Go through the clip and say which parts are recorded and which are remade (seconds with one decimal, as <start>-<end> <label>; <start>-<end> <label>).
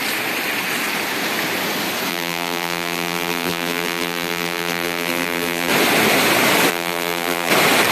0.0-2.1 recorded; 2.1-5.7 remade; 5.7-6.7 recorded; 6.7-7.5 remade; 7.5-7.9 recorded